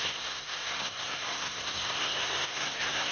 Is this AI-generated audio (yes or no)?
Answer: yes